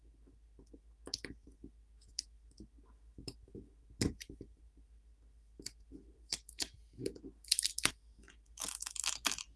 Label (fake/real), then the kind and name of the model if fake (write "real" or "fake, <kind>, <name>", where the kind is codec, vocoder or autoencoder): fake, autoencoder, DAC-VAE